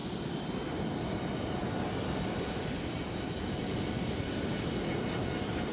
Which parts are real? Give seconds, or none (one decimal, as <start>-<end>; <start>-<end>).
0.0-5.7